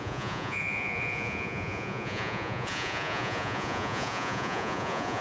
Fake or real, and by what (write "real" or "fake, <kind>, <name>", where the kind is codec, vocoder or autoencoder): fake, vocoder, Vocos